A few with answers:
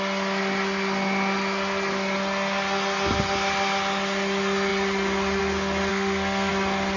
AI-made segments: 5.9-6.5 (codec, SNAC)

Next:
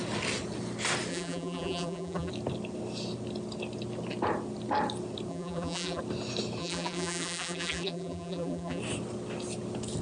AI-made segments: 1.1-2.3 (vocoder, BigVGAN v2); 5.3-6.0; 6.6-8.8

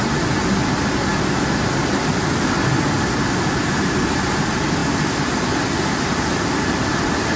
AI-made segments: none

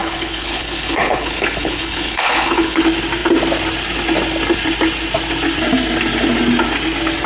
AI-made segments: 0.0-2.8 (codec, HILCodec)

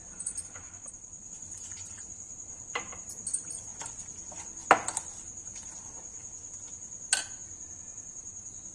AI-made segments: 0.0-3.7 (vocoder, BigVGAN v2); 7.8-8.7